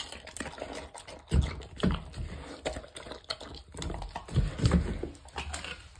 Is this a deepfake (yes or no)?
no